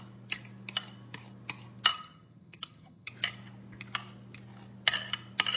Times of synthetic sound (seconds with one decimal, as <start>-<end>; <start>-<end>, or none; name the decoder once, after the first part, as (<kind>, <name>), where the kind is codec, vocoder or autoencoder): 1.9-3.1 (vocoder, HiFi-GAN)